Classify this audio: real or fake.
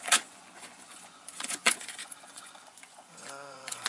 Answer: fake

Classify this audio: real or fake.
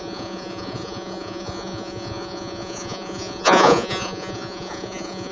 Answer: fake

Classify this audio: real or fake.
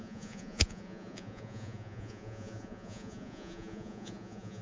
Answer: fake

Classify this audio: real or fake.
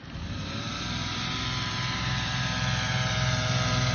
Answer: real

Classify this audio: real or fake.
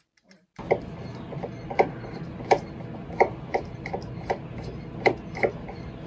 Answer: real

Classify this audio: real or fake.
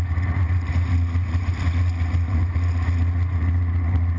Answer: fake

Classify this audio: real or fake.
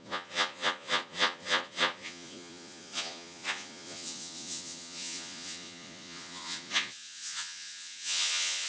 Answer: fake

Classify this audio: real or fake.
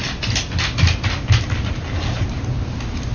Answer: real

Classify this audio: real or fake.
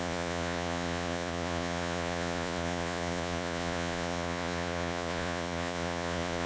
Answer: fake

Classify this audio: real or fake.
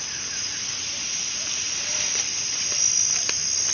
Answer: real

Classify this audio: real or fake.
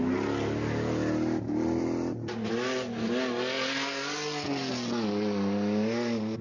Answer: real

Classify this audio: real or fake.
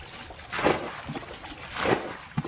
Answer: real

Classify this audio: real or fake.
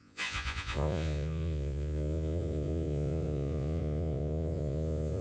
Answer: fake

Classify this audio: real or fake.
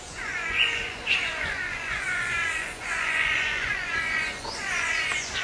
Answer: fake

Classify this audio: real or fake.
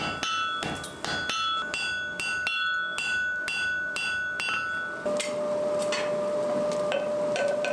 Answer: real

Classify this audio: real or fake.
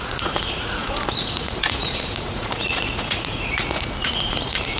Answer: fake